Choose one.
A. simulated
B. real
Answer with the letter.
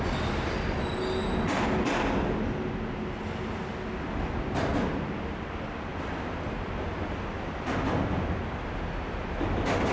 B